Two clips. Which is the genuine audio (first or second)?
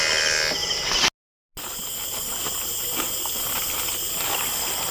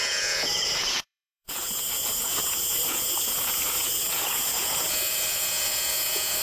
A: first